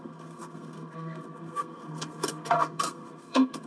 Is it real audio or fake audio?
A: fake